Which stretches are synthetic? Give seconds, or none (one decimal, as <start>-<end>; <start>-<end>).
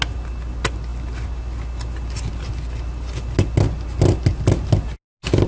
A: none